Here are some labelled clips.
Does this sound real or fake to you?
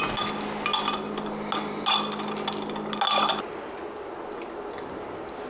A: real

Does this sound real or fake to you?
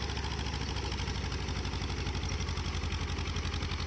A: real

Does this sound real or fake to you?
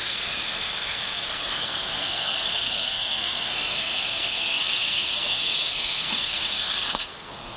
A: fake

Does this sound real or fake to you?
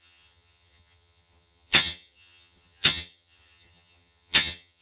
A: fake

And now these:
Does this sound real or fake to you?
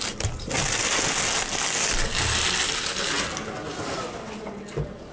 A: real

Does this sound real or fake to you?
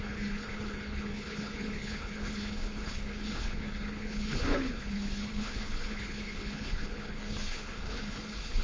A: fake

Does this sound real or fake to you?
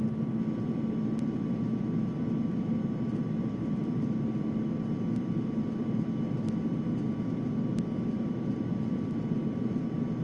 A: real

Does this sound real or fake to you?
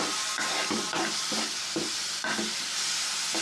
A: real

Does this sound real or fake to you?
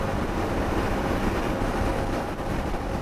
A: real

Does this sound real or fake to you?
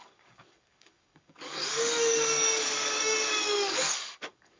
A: fake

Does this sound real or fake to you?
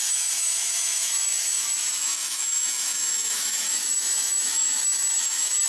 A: fake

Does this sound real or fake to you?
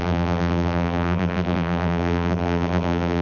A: fake